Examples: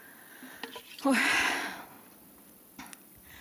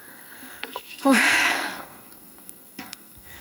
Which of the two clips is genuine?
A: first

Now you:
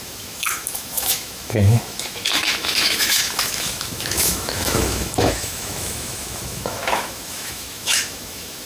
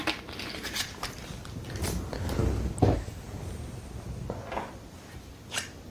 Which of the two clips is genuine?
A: second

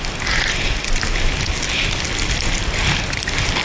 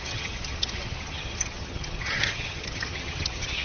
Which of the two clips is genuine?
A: first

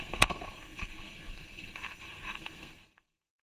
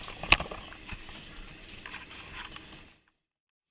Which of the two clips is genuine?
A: second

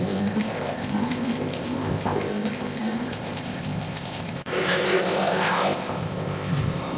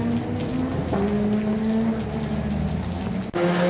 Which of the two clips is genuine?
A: second